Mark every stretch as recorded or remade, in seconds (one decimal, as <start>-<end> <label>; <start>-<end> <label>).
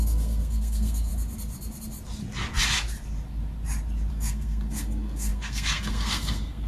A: 0.0-1.1 remade; 1.1-4.1 recorded; 4.1-6.7 remade